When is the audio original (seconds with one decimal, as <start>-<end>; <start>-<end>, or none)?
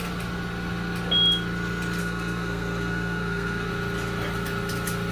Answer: 0.0-2.0; 3.7-5.1